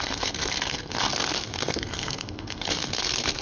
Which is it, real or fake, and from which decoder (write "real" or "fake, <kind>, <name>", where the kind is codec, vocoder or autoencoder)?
fake, codec, SNAC